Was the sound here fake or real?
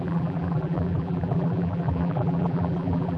fake